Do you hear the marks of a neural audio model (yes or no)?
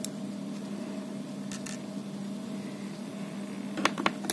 no